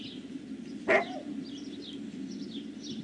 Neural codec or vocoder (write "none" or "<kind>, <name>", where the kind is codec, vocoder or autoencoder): none